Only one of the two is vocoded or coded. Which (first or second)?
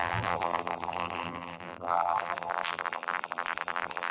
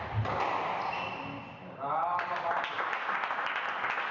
first